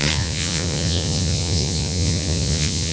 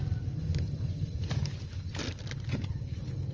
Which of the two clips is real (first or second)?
second